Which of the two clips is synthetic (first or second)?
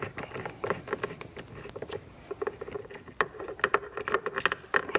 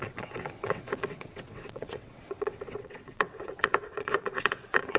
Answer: second